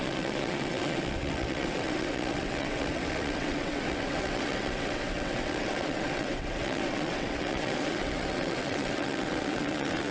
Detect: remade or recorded remade